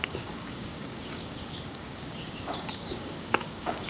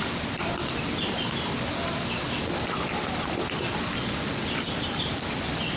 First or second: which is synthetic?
first